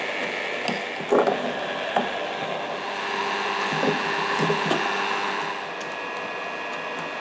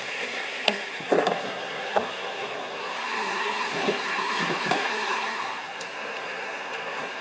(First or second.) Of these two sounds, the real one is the first